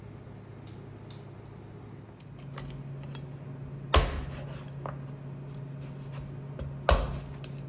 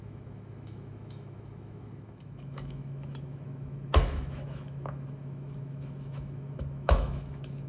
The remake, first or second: second